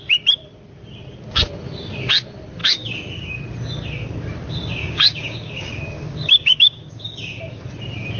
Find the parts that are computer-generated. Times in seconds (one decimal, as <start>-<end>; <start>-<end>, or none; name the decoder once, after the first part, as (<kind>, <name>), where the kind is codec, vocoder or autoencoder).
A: 2.6-3.4 (codec, DAC); 4.8-7.4